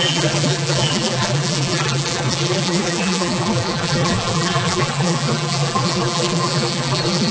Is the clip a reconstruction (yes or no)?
yes